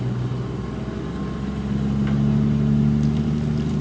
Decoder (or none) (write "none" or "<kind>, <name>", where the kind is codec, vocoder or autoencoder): none